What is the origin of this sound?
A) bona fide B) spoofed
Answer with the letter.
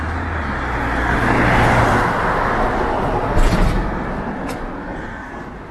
A